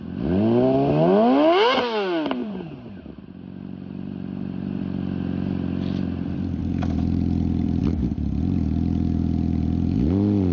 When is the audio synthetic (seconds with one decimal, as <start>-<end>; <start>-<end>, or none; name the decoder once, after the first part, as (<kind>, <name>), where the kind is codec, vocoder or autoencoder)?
2.4-4.8 (vocoder, BigVGAN v2); 6.6-7.8

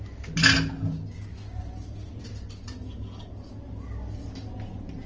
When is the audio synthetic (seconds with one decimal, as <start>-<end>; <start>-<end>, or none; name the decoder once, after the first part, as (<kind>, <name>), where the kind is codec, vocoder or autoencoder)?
1.6-2.3 (vocoder, BigVGAN v2)

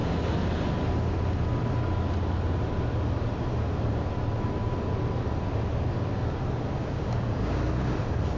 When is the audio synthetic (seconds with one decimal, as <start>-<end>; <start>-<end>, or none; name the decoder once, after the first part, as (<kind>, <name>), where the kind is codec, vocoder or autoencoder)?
6.8-7.6 (codec, DAC)